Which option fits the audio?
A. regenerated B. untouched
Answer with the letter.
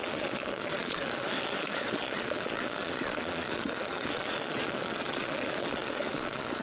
A